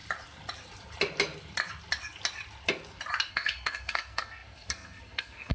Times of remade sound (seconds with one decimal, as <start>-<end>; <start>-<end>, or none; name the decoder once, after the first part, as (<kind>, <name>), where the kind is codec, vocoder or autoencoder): 3.3-5.5 (codec, SNAC)